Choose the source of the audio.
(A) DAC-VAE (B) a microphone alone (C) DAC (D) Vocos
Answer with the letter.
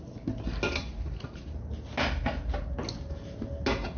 B